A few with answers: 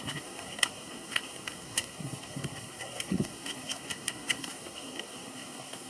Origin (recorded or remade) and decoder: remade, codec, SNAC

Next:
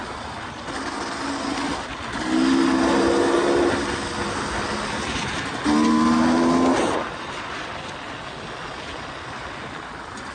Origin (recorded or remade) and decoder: recorded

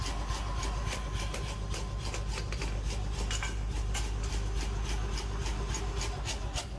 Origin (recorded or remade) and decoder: recorded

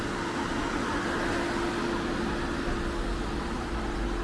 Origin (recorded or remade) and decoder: recorded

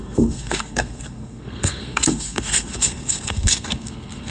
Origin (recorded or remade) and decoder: remade, codec, SNAC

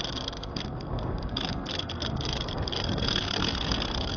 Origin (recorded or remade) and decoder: remade, codec, SNAC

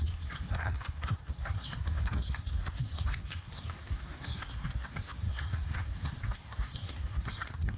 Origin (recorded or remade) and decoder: remade, codec, SNAC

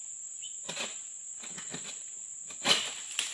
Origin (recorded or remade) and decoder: recorded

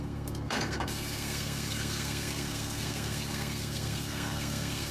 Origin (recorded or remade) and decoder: remade, codec, SNAC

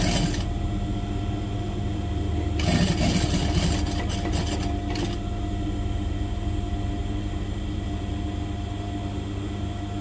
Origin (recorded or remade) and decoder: recorded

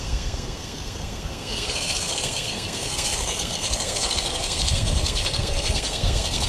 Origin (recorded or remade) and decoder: remade, codec, SNAC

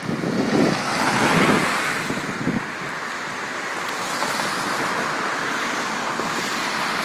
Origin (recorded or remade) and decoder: recorded